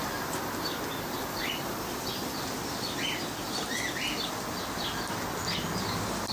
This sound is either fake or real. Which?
real